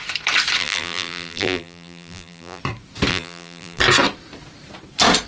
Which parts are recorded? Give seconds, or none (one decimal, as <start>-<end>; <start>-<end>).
0.0-0.6; 2.6-3.1; 3.8-5.3